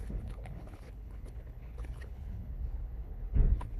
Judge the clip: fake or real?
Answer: fake